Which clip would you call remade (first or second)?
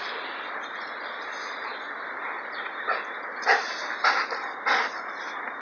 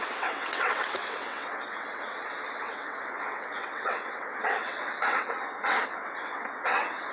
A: second